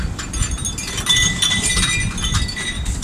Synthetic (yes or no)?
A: no